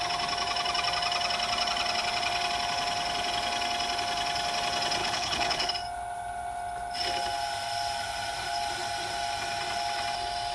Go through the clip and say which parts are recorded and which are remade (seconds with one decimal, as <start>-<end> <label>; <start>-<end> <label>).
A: 0.0-5.0 recorded; 5.0-5.7 remade; 5.7-10.5 recorded